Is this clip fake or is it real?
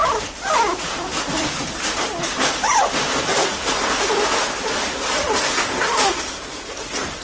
fake